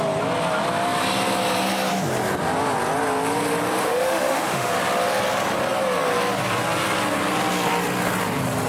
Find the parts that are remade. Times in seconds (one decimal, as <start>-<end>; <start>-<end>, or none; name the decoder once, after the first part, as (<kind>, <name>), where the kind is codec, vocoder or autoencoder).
3.8-4.7 (autoencoder, DAC-VAE)